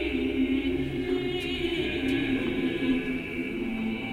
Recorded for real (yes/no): no